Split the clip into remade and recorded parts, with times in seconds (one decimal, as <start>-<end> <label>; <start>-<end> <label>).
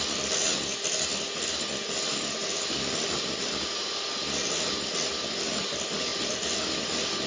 0.0-7.3 recorded